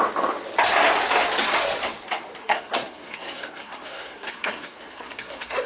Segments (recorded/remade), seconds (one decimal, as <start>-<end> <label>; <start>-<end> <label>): 0.0-2.4 recorded; 2.4-5.7 remade

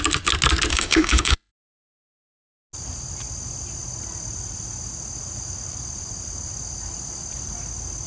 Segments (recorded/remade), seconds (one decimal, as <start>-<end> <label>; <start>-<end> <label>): 0.0-0.7 recorded; 0.7-1.5 remade; 1.5-8.1 recorded

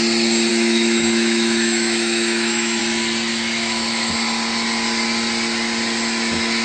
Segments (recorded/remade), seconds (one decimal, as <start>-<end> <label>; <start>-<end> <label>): 0.0-0.5 recorded; 0.5-2.8 remade; 2.8-3.3 recorded; 3.3-4.1 remade; 4.1-6.6 recorded

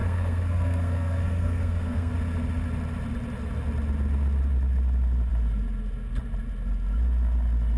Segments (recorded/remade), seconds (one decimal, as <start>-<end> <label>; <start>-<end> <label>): 0.0-2.1 remade; 2.1-7.8 recorded